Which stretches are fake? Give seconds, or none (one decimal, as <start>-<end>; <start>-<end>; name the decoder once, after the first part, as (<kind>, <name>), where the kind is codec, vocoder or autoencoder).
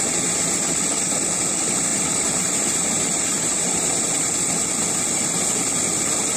1.9-4.3 (vocoder, BigVGAN v2)